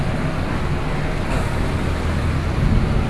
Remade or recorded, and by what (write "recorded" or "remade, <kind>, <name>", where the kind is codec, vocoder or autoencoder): recorded